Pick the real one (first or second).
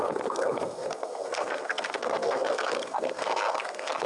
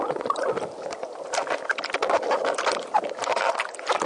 second